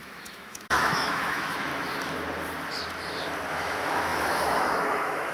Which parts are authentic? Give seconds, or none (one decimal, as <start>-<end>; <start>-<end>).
1.7-3.5